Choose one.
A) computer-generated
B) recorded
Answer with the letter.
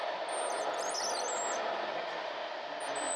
B